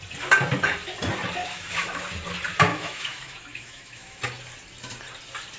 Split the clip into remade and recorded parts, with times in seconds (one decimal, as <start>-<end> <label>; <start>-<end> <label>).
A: 0.0-1.4 recorded; 1.4-2.0 remade; 2.0-2.7 recorded; 2.7-4.2 remade; 4.2-5.6 recorded